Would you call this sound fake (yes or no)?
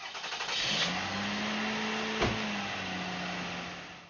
no